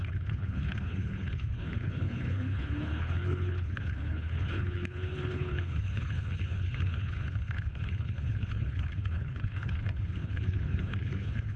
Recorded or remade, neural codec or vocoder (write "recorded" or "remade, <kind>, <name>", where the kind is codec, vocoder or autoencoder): remade, codec, HILCodec